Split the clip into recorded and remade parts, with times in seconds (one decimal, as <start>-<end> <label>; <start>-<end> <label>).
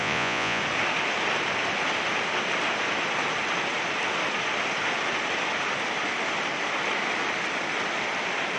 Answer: 0.0-0.6 remade; 0.6-8.6 recorded